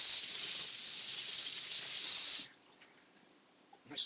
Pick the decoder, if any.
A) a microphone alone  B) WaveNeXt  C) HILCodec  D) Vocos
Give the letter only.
A